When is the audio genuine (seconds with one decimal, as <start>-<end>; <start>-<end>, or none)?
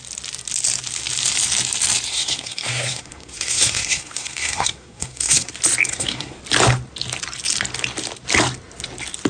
0.0-2.1; 5.5-5.9; 6.4-9.3